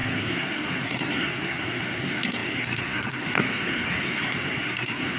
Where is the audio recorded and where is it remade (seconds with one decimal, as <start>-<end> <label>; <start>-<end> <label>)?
0.0-5.2 remade